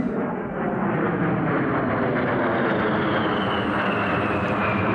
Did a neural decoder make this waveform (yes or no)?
no